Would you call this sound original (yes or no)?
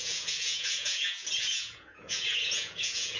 no